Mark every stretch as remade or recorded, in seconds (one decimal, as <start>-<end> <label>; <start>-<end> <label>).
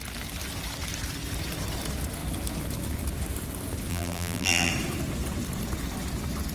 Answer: 0.0-3.9 recorded; 3.9-4.7 remade; 4.7-6.5 recorded